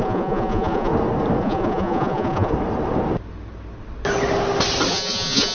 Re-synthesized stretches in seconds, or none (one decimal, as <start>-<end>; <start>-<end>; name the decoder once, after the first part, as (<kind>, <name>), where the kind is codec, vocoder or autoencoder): 0.0-0.9 (vocoder, Vocos); 1.4-2.5; 4.9-5.5